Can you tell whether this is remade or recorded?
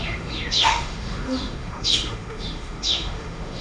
remade